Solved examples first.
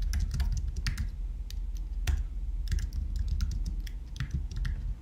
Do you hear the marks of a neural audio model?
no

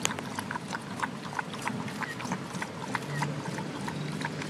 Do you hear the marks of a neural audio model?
no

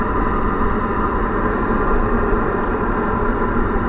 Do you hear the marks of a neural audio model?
no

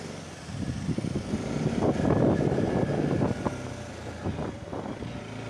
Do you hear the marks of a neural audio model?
no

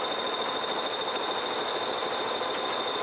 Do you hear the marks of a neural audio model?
no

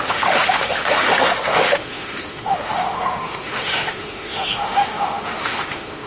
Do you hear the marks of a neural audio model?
yes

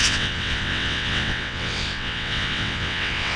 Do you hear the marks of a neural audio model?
yes